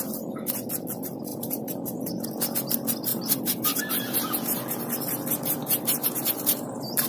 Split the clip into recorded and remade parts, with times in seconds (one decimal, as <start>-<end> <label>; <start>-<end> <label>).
0.0-1.3 recorded; 1.3-2.1 remade; 2.1-3.1 recorded; 3.1-4.9 remade; 4.9-5.6 recorded; 5.6-7.1 remade